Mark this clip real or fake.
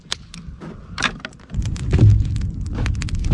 real